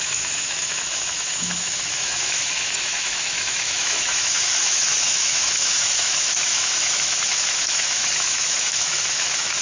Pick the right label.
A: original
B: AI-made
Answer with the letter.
B